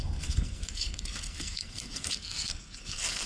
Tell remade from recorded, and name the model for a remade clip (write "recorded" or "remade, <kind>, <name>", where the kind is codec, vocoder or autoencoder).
remade, codec, SNAC